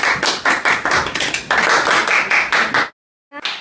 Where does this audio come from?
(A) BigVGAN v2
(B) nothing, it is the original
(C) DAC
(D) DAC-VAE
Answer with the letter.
B